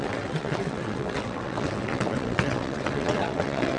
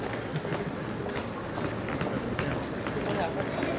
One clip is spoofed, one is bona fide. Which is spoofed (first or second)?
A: first